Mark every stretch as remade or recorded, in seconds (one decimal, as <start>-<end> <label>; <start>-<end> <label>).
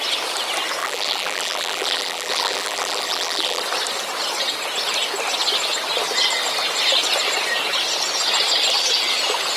0.0-0.8 recorded; 0.8-3.6 remade; 3.6-9.6 recorded